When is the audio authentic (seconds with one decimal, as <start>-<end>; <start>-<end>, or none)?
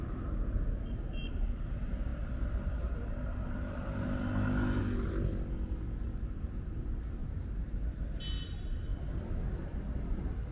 0.0-7.2; 8.2-10.5